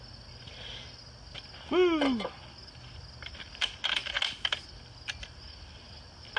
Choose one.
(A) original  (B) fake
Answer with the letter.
A